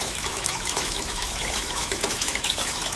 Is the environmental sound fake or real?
fake